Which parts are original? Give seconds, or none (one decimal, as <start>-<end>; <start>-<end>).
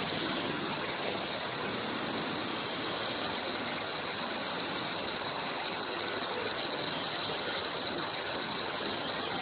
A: 1.7-3.2; 4.4-4.9